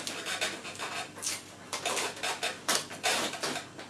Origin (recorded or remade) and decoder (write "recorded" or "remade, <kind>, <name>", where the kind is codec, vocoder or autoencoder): recorded